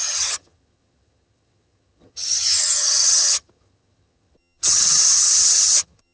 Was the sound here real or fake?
fake